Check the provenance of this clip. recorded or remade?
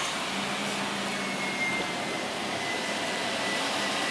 recorded